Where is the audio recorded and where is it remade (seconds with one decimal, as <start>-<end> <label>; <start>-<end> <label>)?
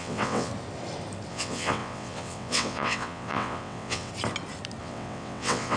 0.0-0.5 remade; 0.5-1.3 recorded; 1.3-4.1 remade; 4.1-4.8 recorded; 4.8-5.8 remade